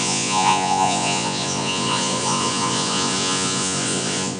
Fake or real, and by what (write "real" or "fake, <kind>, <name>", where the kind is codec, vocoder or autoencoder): fake, vocoder, Vocos